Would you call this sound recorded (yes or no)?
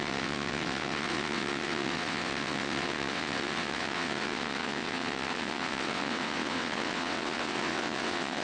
no